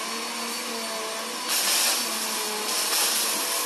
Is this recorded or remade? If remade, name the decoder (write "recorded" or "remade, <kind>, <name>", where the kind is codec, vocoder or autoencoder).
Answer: recorded